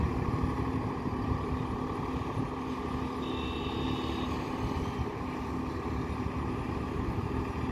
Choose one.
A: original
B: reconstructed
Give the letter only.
A